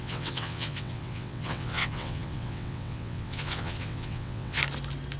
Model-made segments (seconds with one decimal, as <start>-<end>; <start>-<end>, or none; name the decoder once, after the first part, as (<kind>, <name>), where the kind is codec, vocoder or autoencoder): 0.0-4.6 (vocoder, WaveNeXt)